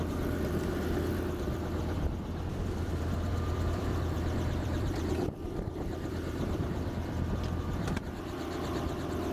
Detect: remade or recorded remade